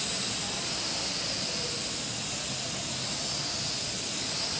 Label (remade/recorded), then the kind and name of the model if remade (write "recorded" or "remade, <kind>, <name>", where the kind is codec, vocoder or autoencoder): recorded